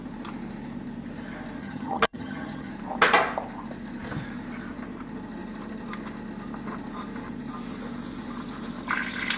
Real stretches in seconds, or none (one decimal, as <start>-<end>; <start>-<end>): 0.0-1.6; 2.7-9.4